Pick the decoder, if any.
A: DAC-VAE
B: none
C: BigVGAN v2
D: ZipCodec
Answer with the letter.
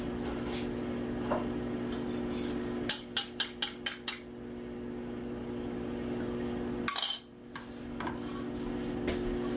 B